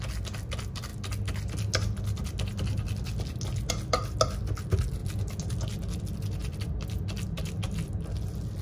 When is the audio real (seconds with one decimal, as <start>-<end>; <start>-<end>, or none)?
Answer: 0.0-6.4; 7.9-8.6